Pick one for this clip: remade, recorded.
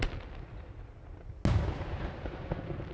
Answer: recorded